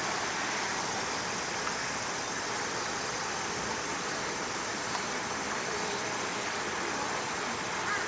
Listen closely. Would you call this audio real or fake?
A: real